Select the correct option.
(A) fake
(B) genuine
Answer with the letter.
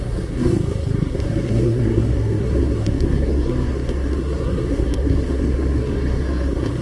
A